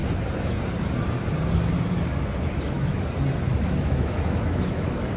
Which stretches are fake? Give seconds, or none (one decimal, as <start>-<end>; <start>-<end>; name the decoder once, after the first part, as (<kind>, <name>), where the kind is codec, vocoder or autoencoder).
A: 2.4-2.9 (autoencoder, DAC-VAE); 3.5-5.2